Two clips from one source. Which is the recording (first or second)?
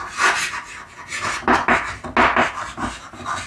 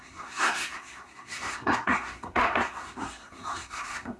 first